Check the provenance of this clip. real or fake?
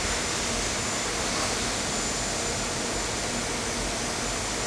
real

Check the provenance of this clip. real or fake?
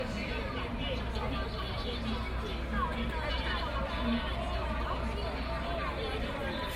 real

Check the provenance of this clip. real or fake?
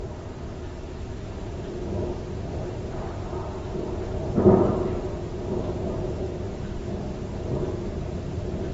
real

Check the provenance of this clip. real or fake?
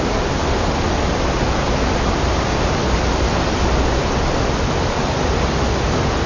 real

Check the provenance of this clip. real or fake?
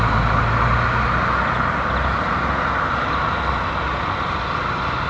real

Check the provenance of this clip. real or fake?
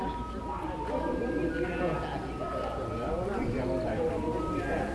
real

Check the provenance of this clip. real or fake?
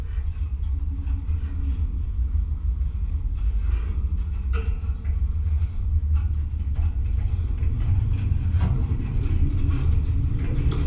real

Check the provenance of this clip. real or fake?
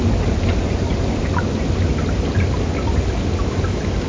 real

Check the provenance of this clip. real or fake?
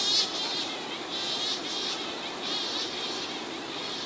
real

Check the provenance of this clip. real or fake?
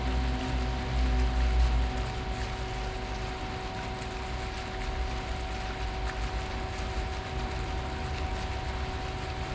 real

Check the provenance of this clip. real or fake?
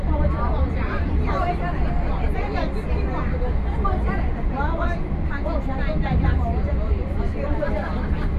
real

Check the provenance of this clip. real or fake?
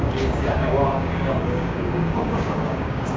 fake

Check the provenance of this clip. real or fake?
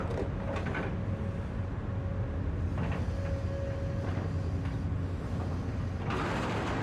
real